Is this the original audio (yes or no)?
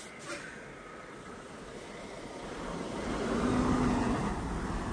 yes